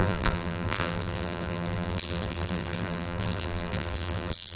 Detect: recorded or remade remade